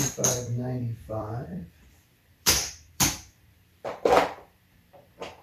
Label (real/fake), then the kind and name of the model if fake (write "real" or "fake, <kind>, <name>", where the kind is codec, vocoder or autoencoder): fake, vocoder, BigVGAN v2